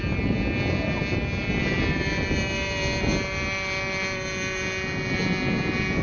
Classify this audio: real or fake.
real